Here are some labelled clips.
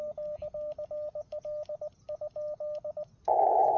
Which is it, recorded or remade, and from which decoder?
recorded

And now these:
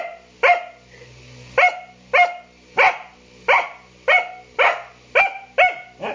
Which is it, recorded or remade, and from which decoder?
recorded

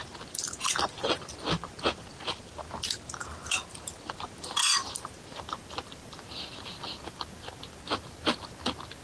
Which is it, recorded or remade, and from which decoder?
recorded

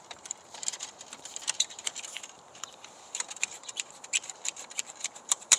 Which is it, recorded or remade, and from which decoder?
remade, vocoder, BigVGAN v2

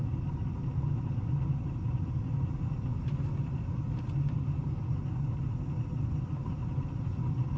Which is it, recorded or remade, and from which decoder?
recorded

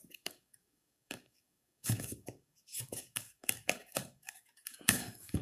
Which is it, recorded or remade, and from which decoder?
remade, codec, DAC